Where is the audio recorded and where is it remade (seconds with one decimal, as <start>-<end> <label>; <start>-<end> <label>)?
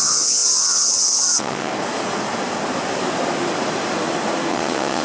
0.0-1.7 remade; 1.7-4.5 recorded; 4.5-5.0 remade